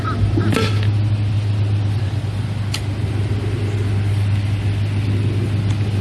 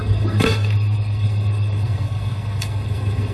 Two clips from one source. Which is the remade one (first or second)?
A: second